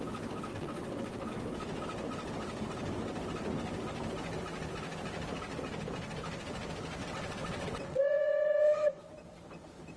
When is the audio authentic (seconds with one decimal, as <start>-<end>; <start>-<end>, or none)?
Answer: 0.0-0.5; 1.3-7.0; 9.0-10.0